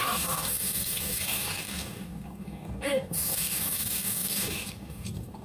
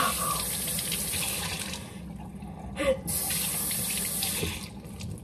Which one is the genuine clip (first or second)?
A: second